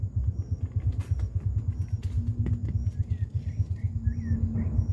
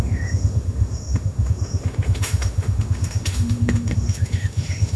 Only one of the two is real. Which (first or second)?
first